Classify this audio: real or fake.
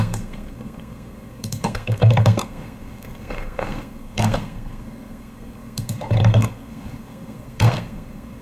fake